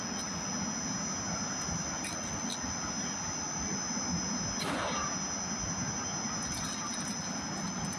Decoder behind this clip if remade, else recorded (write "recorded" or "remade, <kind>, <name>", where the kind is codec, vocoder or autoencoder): recorded